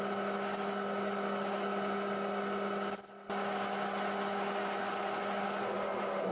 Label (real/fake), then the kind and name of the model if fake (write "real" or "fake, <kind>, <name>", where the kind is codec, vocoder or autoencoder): real